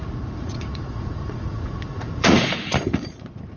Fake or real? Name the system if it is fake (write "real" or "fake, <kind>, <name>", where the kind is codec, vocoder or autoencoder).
fake, vocoder, Vocos